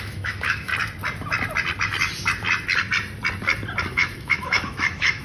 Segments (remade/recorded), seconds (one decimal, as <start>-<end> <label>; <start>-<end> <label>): 0.0-0.7 remade; 0.7-3.8 recorded; 3.8-5.2 remade